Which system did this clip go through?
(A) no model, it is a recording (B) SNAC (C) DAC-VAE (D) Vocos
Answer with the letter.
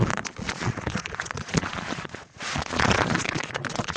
D